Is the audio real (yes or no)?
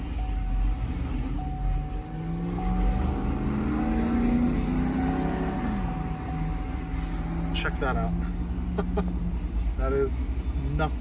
yes